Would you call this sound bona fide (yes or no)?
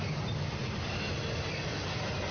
yes